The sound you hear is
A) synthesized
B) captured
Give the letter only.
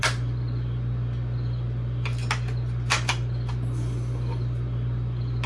B